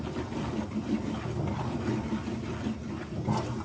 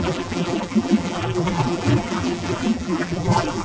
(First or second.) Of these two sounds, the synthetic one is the second